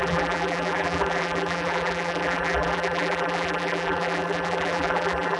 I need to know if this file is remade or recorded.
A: remade